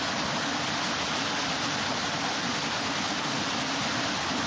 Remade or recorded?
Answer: recorded